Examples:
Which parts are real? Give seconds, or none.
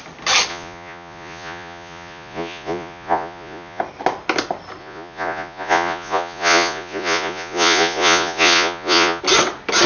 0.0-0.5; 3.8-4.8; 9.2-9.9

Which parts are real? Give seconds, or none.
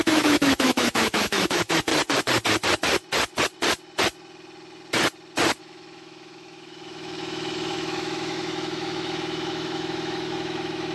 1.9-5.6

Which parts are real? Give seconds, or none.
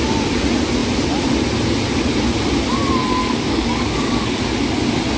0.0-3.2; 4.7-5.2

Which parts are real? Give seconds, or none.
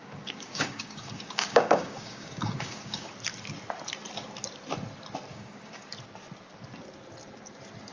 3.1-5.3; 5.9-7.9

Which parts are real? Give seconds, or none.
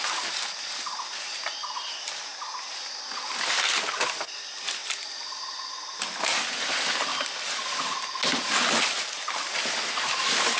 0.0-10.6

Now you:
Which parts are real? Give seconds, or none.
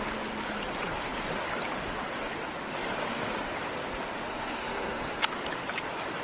0.0-4.3; 5.2-6.2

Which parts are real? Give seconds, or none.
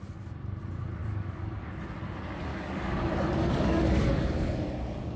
0.0-1.0; 1.7-2.5